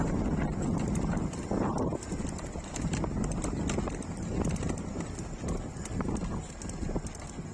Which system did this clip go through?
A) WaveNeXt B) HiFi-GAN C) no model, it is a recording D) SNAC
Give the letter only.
C